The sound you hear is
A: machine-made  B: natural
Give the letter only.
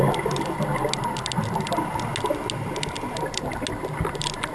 B